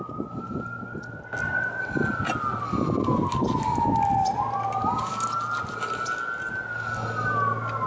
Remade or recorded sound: recorded